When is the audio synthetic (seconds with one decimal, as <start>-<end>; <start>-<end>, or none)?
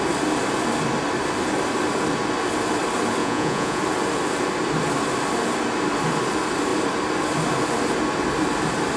3.2-3.8